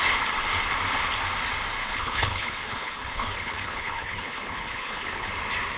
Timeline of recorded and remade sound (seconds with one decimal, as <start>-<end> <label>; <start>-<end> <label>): 0.0-1.8 recorded; 1.8-5.3 remade; 5.3-5.8 recorded